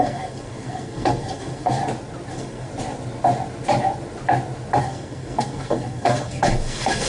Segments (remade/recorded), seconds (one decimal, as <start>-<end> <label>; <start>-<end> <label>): 0.0-1.8 remade; 1.8-2.3 recorded; 2.3-2.7 remade; 2.7-4.8 recorded; 4.8-7.1 remade